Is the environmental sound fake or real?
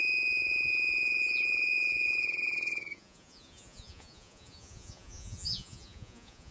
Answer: fake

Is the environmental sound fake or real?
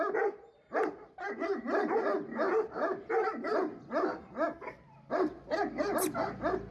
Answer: real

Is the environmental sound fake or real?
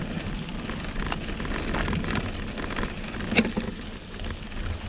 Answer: real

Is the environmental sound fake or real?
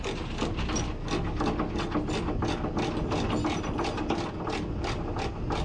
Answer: real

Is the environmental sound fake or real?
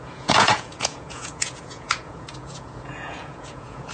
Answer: fake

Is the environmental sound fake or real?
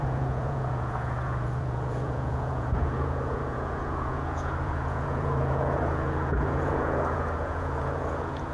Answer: fake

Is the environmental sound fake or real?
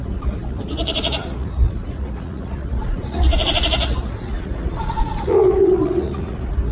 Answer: fake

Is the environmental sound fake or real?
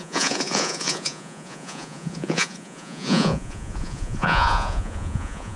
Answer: fake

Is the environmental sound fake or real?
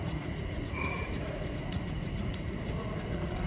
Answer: fake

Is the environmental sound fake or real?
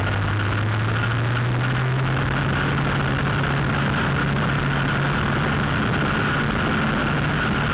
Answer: real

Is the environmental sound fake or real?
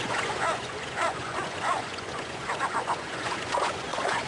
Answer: fake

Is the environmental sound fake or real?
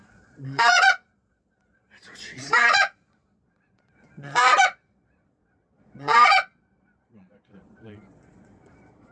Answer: fake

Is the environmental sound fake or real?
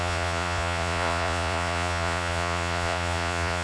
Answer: fake